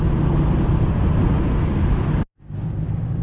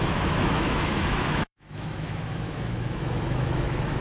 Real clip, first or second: first